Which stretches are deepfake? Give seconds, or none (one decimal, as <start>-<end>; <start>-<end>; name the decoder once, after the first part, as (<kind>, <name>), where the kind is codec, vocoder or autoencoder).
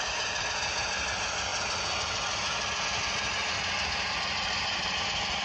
none